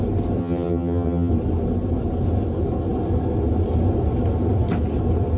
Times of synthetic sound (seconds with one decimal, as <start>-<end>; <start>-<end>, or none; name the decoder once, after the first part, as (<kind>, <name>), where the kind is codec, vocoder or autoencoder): 0.4-1.3 (vocoder, HiFi-GAN)